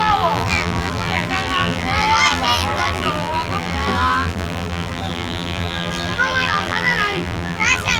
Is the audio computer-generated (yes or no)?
yes